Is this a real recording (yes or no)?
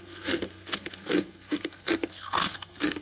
no